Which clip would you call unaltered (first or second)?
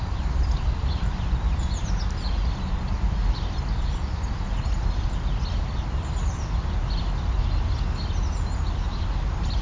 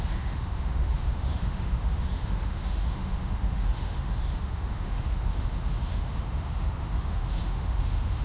first